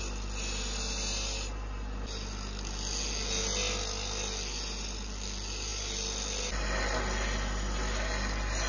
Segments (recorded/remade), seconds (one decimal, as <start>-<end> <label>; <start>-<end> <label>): 0.0-8.7 recorded